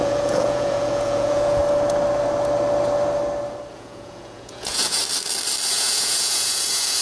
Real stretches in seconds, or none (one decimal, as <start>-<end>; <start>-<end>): 1.6-3.7; 5.0-5.7